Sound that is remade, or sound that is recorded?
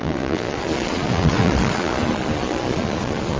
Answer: remade